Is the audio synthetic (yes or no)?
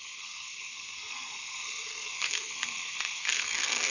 yes